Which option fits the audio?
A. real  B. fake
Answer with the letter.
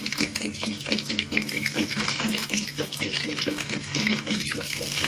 B